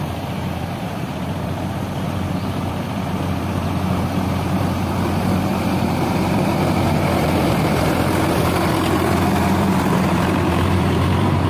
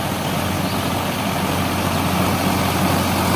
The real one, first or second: second